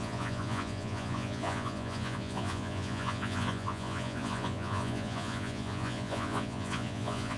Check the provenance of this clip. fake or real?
fake